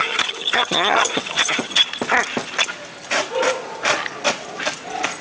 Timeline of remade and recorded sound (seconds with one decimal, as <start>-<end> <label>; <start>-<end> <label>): 0.0-1.8 remade; 1.8-5.2 recorded